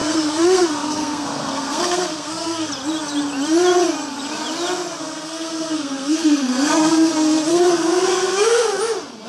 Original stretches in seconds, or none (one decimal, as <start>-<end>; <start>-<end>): 2.7-5.0; 7.1-7.5; 8.8-9.3